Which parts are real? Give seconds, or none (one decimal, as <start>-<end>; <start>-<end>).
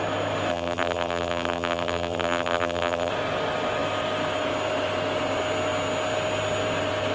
0.0-0.5; 3.1-7.1